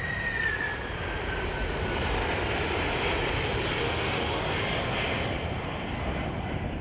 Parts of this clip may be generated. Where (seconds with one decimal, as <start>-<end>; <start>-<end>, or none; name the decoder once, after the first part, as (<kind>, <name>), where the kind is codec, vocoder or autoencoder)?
3.8-4.4 (autoencoder, DAC-VAE)

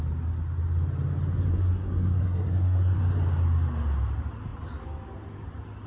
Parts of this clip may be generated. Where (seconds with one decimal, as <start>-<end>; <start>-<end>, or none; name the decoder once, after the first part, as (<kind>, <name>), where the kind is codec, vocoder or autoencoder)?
1.5-3.0 (codec, SNAC)

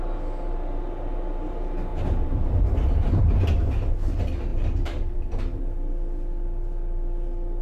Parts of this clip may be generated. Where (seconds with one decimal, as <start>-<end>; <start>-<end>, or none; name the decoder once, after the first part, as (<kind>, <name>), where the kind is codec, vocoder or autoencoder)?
1.9-3.3 (vocoder, BigVGAN v2); 4.5-5.6

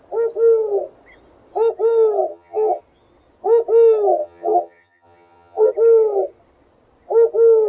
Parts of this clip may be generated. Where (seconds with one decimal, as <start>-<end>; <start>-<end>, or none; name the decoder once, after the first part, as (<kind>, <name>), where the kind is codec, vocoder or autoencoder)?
2.3-2.8 (vocoder, HiFi-GAN); 4.2-5.7

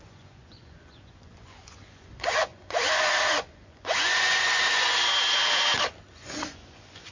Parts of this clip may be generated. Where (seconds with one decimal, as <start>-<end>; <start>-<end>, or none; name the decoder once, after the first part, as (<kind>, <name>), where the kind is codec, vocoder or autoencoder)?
0.0-4.9 (vocoder, Vocos); 6.1-7.1

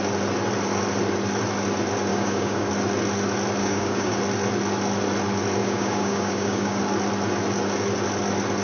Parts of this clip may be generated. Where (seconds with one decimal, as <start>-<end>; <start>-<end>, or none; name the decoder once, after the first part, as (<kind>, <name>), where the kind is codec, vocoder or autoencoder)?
2.1-2.7 (codec, DAC); 3.6-4.2; 5.6-6.8

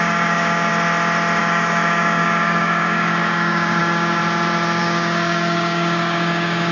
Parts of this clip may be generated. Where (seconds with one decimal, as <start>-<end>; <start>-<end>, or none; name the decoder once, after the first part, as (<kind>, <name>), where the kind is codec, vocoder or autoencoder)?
0.0-0.7 (codec, DAC); 1.4-4.2; 4.8-6.7